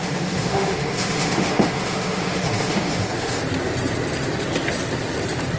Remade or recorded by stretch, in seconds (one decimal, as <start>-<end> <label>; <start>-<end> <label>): 0.0-3.4 remade; 3.4-5.6 recorded